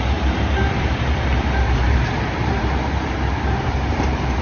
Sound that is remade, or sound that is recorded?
remade